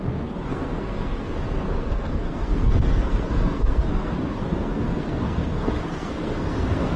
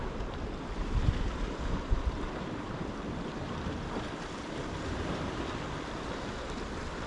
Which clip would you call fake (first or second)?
first